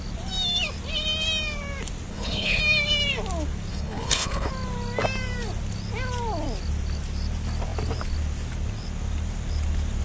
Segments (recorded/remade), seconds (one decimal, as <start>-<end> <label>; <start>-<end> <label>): 0.0-2.1 recorded; 2.1-2.6 remade; 2.6-3.7 recorded; 3.7-4.5 remade; 4.5-10.0 recorded